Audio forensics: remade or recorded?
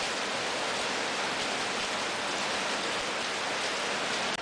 recorded